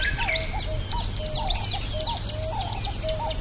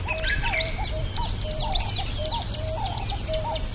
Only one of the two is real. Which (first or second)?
first